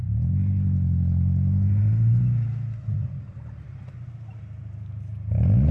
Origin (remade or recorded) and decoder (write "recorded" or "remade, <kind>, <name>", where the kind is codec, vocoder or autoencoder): recorded